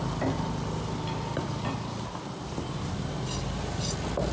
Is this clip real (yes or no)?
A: yes